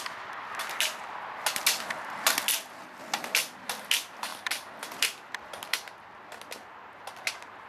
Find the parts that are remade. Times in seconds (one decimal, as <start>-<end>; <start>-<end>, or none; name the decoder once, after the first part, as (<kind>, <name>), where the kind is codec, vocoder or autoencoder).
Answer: none